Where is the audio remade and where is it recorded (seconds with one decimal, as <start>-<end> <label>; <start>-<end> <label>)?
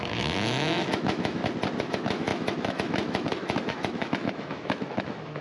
0.0-1.4 remade; 1.4-1.9 recorded; 1.9-5.4 remade